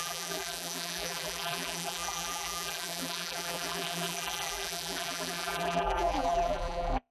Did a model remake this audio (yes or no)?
yes